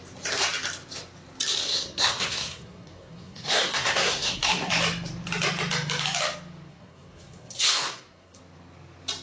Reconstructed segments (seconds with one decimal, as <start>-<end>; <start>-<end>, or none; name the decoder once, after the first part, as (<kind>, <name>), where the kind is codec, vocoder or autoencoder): 1.6-4.7 (codec, SNAC); 6.7-8.4

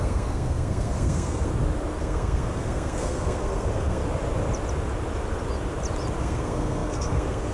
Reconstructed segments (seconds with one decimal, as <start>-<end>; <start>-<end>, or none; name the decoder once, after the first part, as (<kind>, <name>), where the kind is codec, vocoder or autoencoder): 0.0-1.5 (codec, SNAC); 2.0-4.0; 6.2-7.5

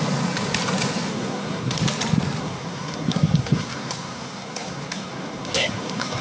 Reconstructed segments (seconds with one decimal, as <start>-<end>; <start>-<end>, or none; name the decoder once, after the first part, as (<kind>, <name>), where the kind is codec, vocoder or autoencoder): 1.1-1.8 (codec, SNAC); 2.4-6.2

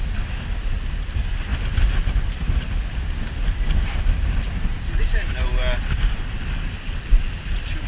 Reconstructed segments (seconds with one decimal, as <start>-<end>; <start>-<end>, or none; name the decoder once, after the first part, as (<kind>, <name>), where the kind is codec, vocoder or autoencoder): none